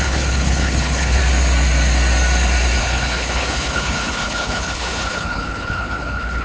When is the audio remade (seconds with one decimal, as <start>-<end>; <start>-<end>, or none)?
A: 0.0-1.2; 2.8-6.4